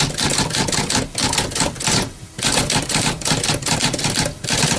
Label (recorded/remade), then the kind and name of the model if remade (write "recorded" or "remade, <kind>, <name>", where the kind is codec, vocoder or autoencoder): recorded